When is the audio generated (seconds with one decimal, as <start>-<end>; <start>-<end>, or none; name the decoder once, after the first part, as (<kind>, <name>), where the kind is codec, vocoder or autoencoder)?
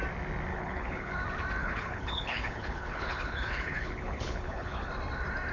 0.5-1.1 (codec, HILCodec); 1.6-4.9